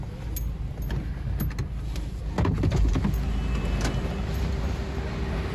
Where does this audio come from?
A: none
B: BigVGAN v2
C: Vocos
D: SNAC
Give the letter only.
A